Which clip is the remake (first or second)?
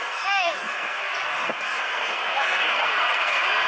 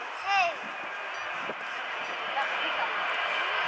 first